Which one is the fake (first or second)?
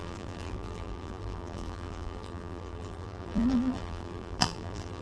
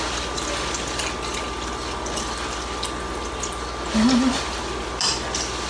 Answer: first